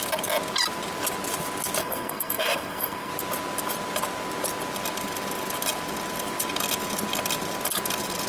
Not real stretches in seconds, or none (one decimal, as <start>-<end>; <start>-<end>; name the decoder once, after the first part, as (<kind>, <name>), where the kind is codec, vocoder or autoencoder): 1.8-3.1 (codec, SNAC)